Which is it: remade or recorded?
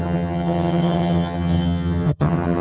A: remade